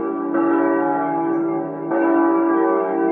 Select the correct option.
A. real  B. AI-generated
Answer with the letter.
B